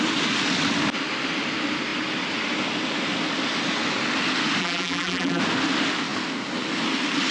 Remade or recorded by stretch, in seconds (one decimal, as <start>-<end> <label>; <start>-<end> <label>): 0.0-4.6 recorded; 4.6-5.4 remade; 5.4-7.3 recorded